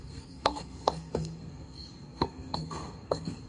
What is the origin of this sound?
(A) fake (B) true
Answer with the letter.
A